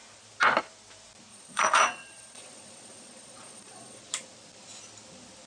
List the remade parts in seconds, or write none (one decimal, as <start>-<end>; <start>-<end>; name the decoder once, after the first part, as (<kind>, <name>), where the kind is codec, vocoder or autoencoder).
1.3-4.0 (vocoder, Vocos)

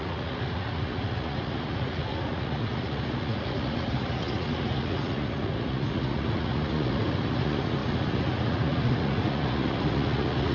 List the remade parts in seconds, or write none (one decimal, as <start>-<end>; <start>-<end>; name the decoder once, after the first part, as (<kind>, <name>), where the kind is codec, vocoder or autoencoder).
0.0-10.5 (vocoder, Vocos)